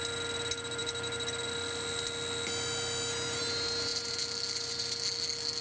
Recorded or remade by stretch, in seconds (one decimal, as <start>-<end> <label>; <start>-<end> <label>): 0.0-5.6 recorded